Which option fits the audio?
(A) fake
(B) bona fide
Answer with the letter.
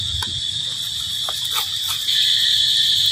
A